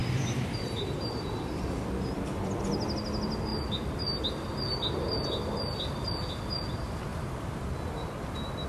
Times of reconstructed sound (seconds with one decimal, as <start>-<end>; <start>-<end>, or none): 0.0-1.6; 7.1-7.7